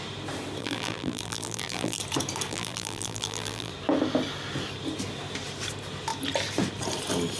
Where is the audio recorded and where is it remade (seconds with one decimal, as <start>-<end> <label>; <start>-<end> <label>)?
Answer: 0.0-0.6 recorded; 0.6-2.0 remade; 2.0-2.5 recorded; 2.5-3.7 remade; 3.7-7.4 recorded